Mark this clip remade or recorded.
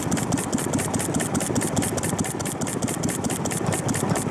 recorded